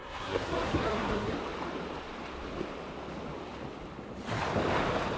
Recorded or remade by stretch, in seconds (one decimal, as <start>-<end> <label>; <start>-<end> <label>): 0.0-1.3 remade; 1.3-5.2 recorded